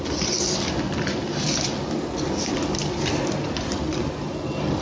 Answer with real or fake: real